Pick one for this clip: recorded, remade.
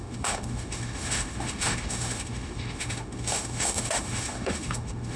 remade